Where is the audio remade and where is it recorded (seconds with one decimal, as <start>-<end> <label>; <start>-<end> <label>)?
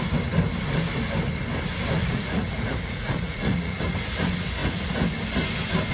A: 0.0-2.0 recorded; 2.0-3.8 remade; 3.8-5.9 recorded